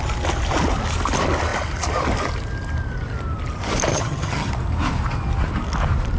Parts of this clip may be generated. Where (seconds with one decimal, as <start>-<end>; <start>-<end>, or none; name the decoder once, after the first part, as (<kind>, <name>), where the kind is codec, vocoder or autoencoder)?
3.9-4.5 (vocoder, HiFi-GAN)